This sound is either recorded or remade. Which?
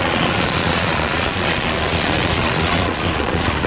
remade